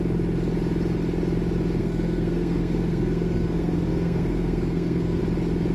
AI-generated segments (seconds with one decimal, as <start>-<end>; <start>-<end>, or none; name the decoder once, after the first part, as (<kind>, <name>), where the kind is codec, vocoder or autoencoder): 1.8-5.2 (codec, SNAC)